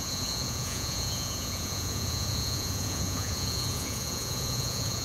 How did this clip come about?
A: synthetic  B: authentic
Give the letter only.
A